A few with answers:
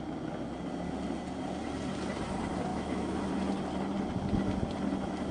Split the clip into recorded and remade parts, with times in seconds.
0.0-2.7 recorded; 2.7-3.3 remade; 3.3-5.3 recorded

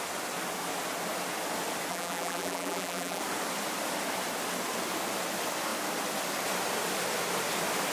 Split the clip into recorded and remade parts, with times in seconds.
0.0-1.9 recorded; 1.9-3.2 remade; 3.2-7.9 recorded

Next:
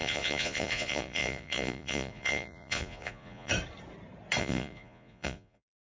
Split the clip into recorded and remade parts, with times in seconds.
0.0-3.5 remade; 3.5-4.4 recorded; 4.4-5.9 remade